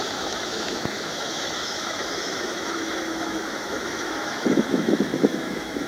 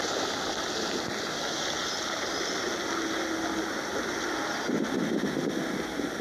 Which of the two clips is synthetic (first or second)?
first